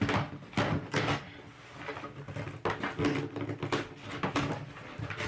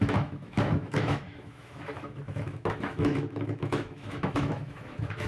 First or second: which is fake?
second